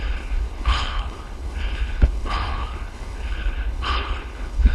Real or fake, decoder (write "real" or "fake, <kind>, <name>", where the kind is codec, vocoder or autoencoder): fake, codec, HILCodec